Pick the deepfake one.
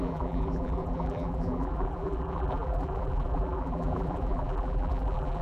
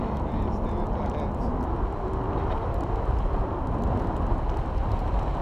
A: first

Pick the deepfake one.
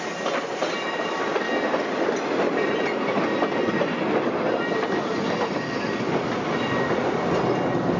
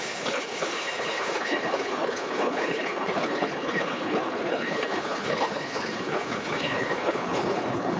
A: second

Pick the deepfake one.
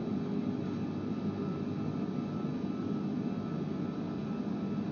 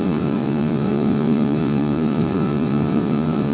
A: second